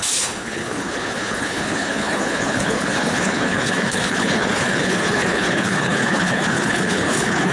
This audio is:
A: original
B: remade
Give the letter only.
B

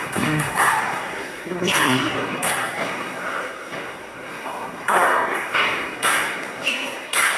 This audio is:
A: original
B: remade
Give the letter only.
B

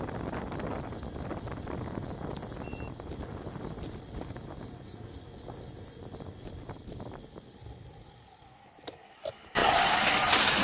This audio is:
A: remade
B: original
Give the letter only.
B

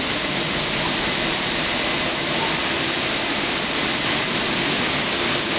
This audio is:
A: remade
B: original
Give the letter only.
B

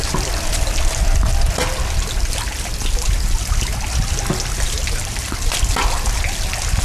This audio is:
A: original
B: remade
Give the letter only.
A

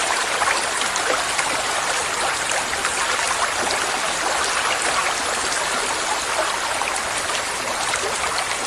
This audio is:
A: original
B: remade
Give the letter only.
A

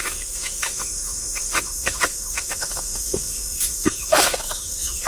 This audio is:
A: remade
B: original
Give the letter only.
A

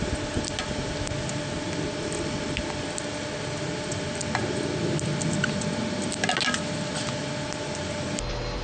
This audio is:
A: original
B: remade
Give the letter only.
A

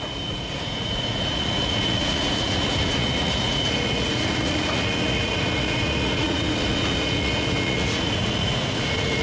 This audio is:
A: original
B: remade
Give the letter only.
B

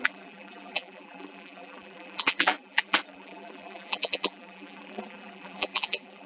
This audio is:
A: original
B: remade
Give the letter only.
B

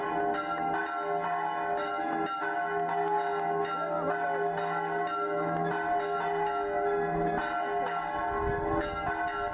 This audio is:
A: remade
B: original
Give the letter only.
B